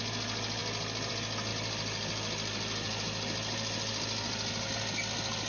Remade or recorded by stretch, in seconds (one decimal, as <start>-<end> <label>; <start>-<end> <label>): 0.0-1.5 recorded; 1.5-4.7 remade; 4.7-5.5 recorded